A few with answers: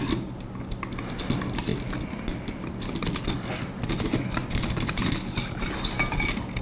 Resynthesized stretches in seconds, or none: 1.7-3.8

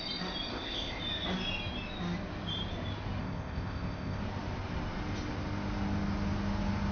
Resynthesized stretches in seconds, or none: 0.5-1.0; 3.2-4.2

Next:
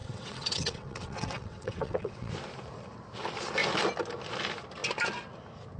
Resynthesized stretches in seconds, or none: 0.0-2.3

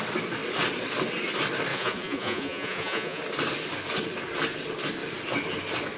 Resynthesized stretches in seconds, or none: 1.7-3.2